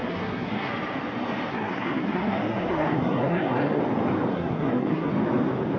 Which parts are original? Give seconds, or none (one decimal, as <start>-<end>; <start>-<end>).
0.7-1.5; 3.8-4.3; 5.1-5.8

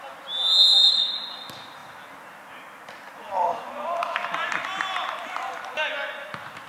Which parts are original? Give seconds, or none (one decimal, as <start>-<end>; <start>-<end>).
0.0-6.7

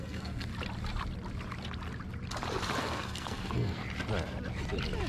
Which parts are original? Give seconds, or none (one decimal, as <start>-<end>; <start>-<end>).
0.5-2.8; 3.8-5.1

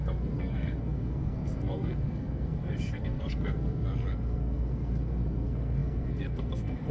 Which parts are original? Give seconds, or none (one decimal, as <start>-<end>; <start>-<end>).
none

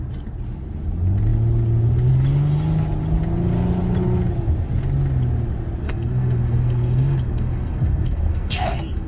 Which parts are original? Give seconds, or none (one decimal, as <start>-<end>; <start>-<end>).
0.0-5.8

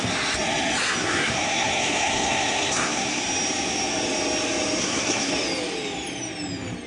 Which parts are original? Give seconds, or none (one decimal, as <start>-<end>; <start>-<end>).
0.0-1.0; 3.2-4.8; 5.3-6.9